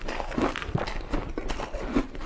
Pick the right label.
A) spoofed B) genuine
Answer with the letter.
B